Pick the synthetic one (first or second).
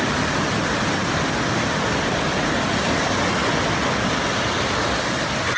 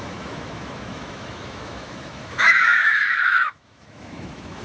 second